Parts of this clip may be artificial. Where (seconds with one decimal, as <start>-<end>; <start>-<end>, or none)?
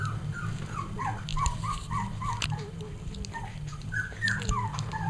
none